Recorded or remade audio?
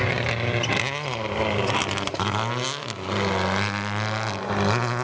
recorded